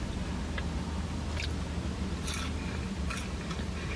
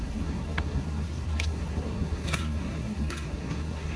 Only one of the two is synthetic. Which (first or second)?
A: second